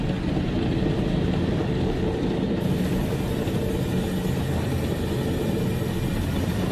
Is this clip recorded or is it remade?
recorded